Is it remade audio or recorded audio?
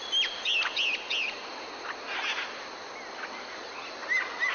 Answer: recorded